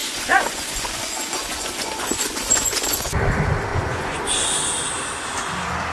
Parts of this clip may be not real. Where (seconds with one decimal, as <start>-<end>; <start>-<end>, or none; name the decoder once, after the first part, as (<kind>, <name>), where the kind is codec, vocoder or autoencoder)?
0.0-3.2 (vocoder, Vocos); 3.7-4.2